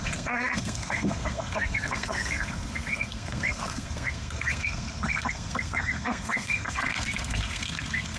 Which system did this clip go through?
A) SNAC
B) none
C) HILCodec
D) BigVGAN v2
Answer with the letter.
A